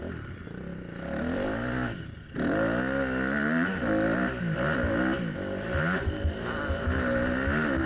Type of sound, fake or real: real